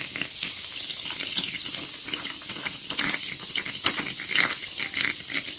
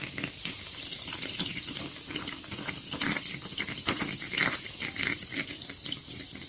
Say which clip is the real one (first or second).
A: first